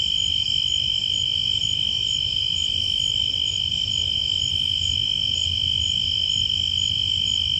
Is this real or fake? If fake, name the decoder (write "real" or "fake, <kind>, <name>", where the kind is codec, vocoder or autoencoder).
real